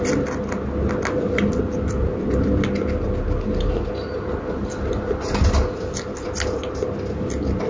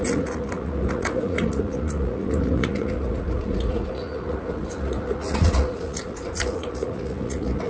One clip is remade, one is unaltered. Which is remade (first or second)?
second